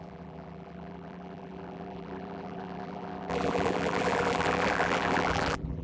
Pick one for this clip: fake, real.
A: fake